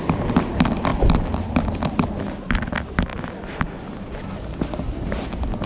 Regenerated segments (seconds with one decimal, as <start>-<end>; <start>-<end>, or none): none